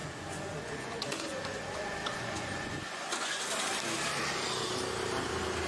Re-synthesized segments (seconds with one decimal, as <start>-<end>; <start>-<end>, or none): 0.0-3.4